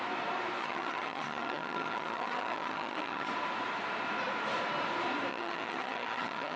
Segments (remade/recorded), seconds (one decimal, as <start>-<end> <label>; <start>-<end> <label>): 0.0-0.6 recorded; 0.6-3.3 remade; 3.3-5.3 recorded; 5.3-6.6 remade